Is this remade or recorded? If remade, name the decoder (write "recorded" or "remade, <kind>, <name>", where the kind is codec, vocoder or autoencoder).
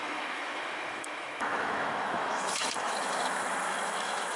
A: remade, autoencoder, DAC-VAE